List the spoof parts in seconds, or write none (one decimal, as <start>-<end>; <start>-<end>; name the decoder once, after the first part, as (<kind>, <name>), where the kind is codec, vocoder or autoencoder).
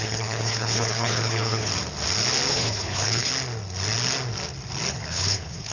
0.0-1.7 (codec, HILCodec); 2.5-3.3; 4.9-5.7